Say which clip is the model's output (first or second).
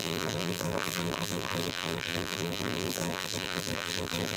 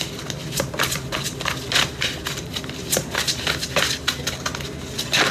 first